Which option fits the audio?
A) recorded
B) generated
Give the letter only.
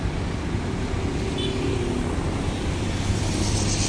A